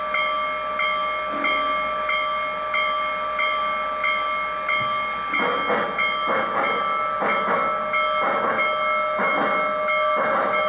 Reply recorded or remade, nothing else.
recorded